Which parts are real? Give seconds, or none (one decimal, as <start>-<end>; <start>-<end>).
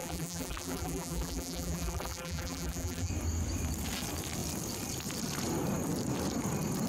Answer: 3.1-6.9